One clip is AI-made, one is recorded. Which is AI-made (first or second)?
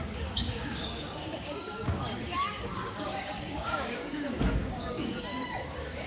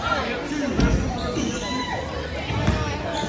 first